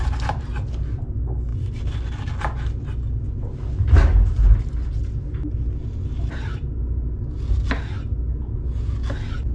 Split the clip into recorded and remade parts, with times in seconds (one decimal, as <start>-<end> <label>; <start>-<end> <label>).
0.0-9.5 recorded